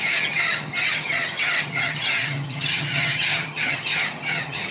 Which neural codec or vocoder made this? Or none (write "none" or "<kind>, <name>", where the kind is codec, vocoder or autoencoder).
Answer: vocoder, HiFi-GAN